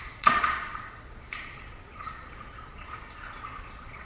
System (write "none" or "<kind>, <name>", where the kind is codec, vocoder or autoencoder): vocoder, Vocos